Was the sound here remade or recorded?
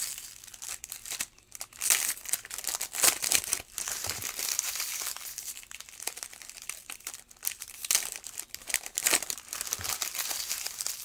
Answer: remade